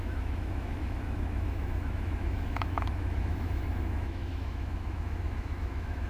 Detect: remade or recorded remade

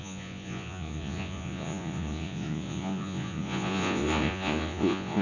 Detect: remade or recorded remade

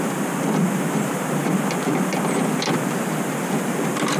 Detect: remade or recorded recorded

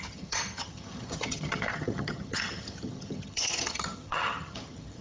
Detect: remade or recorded remade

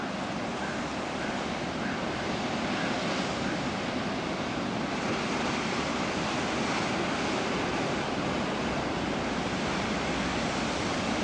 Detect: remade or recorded recorded